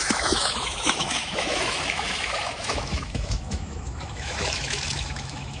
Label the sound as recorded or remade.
remade